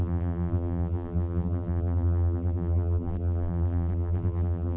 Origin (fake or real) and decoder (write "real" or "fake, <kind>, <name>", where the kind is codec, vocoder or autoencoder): fake, vocoder, BigVGAN v2